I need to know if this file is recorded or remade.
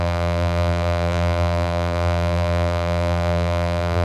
remade